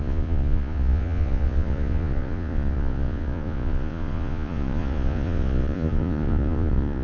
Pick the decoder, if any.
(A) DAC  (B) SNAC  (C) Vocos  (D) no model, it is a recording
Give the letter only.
C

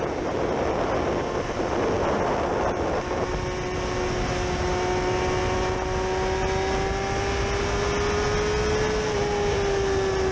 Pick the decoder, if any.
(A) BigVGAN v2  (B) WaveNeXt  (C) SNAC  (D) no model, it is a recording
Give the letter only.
D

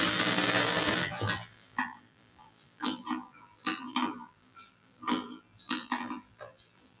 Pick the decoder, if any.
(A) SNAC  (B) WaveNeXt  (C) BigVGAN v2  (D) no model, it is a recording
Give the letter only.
C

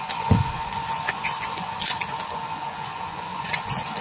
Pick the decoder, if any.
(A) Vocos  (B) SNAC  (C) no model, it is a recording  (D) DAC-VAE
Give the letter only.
A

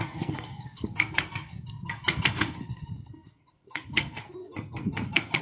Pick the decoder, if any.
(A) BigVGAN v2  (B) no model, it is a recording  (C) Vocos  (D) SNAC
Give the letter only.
D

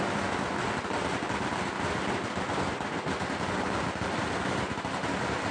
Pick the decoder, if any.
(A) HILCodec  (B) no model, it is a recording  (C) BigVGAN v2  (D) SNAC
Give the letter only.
B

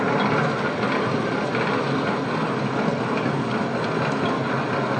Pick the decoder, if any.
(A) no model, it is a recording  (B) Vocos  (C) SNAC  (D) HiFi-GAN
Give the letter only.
A